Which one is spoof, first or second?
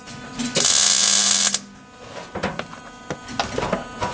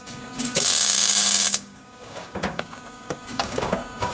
second